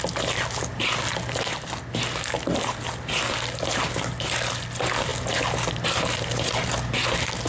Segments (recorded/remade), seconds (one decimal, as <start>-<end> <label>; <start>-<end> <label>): 0.0-7.5 recorded